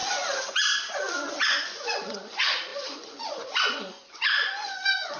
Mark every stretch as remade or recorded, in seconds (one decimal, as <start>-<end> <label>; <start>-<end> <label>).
0.0-1.3 recorded; 1.3-5.2 remade